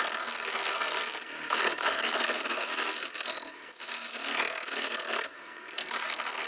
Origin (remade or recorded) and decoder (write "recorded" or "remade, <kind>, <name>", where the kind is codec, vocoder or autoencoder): remade, codec, SNAC